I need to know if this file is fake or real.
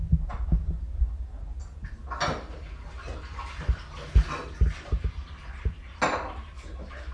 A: real